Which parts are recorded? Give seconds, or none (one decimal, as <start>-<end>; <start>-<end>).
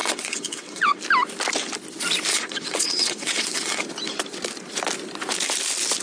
1.0-2.3; 3.8-6.0